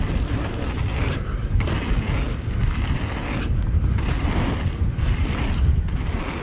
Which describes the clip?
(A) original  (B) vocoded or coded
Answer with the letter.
A